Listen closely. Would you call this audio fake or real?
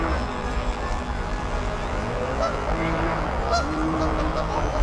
fake